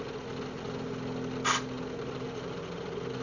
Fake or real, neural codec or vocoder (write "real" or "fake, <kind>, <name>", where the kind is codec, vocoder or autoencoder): real